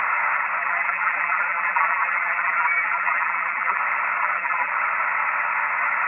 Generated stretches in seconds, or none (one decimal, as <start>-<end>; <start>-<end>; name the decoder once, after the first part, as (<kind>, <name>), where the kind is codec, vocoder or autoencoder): 0.6-3.8 (vocoder, BigVGAN v2); 4.2-4.7